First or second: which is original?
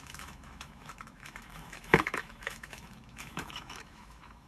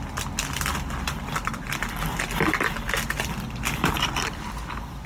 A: second